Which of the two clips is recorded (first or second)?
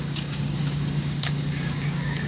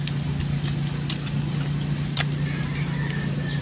second